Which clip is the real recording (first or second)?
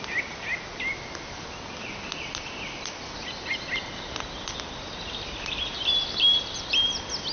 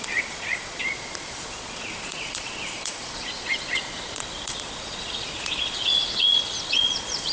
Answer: first